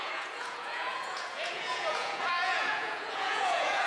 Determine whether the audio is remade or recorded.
remade